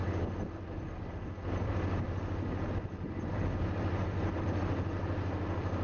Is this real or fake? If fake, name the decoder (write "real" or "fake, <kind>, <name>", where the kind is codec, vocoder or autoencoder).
real